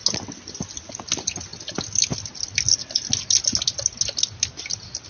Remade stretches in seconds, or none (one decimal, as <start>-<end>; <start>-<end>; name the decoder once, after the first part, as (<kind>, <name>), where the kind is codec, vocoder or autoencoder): none